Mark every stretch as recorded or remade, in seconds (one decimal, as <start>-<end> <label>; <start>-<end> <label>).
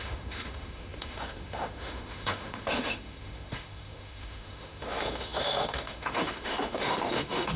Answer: 0.0-7.6 remade